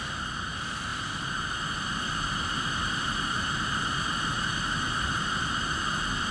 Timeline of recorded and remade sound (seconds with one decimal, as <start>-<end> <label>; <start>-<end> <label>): 0.0-6.3 recorded